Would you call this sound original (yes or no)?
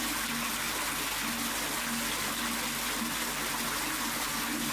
yes